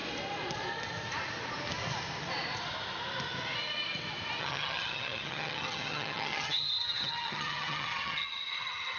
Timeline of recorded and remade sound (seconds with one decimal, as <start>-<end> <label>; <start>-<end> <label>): 0.0-4.4 recorded; 4.4-9.0 remade